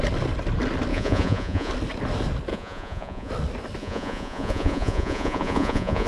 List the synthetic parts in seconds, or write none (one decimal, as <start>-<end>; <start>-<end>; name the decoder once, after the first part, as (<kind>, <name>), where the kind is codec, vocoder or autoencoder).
0.9-1.7 (vocoder, Vocos); 2.5-3.3; 3.8-6.1